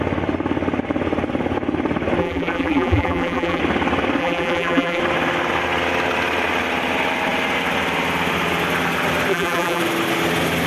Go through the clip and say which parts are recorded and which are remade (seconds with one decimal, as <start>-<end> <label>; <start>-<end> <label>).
0.0-2.2 recorded; 2.2-3.6 remade; 3.6-4.2 recorded; 4.2-5.0 remade; 5.0-9.3 recorded; 9.3-9.8 remade; 9.8-10.7 recorded